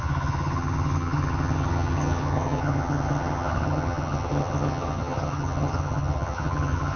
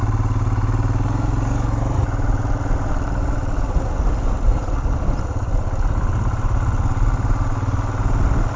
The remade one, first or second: first